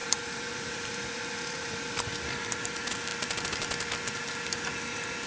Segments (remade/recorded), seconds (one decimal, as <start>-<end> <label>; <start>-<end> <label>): 0.0-2.1 remade; 2.1-5.3 recorded